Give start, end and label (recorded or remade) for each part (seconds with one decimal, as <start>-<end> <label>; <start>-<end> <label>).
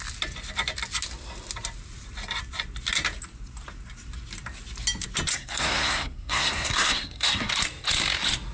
0.0-5.3 recorded; 5.3-7.5 remade; 7.5-8.5 recorded